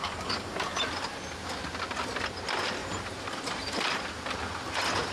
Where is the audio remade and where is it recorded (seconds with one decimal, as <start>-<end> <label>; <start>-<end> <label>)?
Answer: 0.0-2.8 recorded; 2.8-4.2 remade; 4.2-5.1 recorded